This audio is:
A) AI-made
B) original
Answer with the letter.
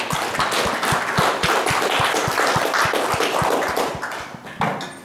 B